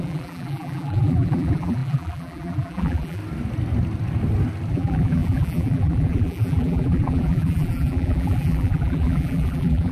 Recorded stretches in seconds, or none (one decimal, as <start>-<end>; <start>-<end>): 3.2-4.7